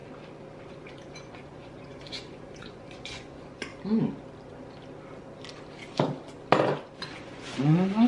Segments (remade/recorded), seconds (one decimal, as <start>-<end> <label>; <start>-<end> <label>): 0.0-0.7 recorded; 0.7-3.7 remade; 3.7-7.0 recorded; 7.0-8.1 remade

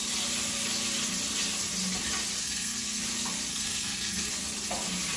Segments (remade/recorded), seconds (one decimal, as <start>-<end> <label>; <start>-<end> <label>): 0.0-2.4 recorded; 2.4-3.0 remade; 3.0-3.5 recorded; 3.5-4.3 remade; 4.3-5.2 recorded

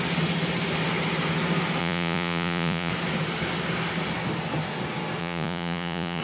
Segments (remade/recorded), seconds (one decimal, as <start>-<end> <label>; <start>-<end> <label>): 0.0-1.8 recorded; 1.8-2.9 remade; 2.9-5.2 recorded; 5.2-6.2 remade

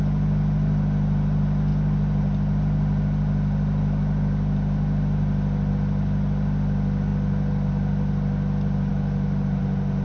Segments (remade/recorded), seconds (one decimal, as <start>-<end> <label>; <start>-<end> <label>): 0.0-10.0 recorded

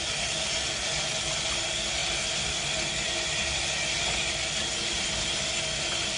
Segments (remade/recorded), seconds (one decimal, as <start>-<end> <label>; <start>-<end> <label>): 0.0-6.2 recorded